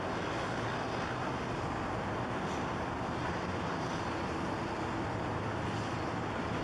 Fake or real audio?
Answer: real